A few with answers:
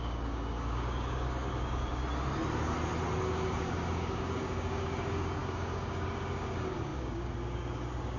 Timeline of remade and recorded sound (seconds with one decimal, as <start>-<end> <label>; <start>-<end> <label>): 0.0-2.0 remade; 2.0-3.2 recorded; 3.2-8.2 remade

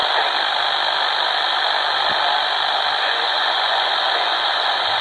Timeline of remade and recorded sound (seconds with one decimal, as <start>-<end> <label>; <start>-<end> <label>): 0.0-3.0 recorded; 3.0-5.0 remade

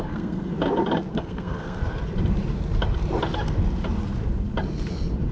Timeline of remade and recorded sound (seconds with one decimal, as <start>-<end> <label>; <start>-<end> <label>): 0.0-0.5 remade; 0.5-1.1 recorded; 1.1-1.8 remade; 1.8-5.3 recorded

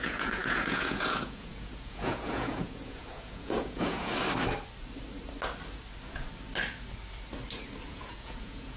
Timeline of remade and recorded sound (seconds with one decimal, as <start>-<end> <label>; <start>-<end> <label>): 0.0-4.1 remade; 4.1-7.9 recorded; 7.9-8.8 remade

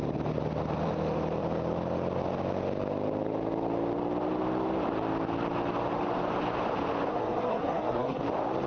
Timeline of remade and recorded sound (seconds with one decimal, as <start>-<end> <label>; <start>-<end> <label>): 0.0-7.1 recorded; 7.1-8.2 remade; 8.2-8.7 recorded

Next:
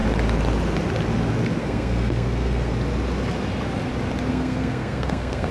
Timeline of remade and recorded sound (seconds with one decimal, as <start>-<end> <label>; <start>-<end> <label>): 0.0-1.6 recorded; 1.6-2.7 remade; 2.7-4.3 recorded; 4.3-5.5 remade